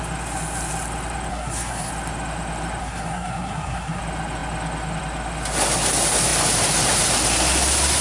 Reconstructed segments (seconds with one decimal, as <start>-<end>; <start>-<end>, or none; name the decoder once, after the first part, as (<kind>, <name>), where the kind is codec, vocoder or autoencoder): 1.3-1.9 (codec, SNAC); 2.8-4.0

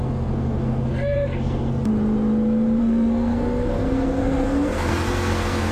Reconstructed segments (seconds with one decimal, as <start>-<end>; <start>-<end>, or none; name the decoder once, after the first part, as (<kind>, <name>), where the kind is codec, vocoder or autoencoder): 0.0-1.9 (codec, SNAC); 2.8-5.7

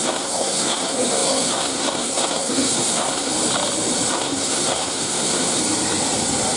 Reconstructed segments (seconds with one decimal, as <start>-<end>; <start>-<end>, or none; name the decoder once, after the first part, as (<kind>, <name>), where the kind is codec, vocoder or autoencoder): 0.0-3.3 (codec, SNAC); 4.1-5.6

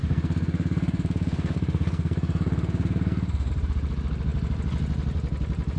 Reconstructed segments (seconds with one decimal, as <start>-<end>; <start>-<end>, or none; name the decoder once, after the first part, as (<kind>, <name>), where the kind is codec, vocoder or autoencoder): 0.0-3.5 (codec, SNAC)